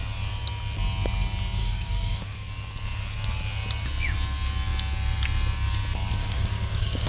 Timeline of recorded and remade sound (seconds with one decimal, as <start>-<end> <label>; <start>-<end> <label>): 0.0-1.6 recorded; 1.6-2.5 remade; 2.5-6.2 recorded; 6.2-7.1 remade